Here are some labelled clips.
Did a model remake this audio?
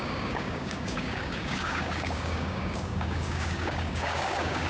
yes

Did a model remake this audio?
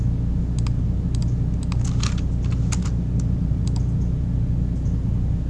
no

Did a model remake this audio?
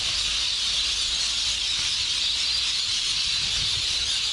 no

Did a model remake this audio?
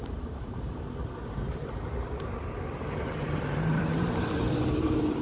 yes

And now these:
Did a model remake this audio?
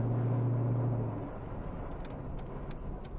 no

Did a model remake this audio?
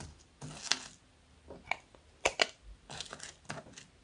no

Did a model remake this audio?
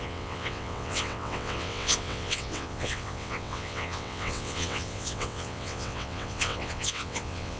yes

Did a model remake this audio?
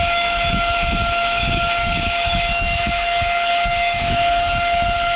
yes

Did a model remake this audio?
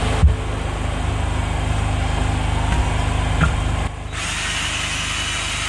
no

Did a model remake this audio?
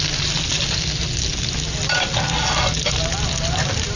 no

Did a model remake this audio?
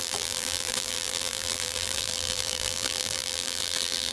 yes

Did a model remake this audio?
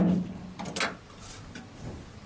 no